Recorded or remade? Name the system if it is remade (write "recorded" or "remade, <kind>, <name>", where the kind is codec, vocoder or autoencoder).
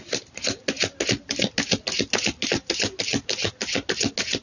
recorded